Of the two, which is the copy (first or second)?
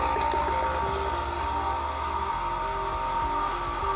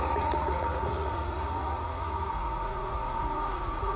second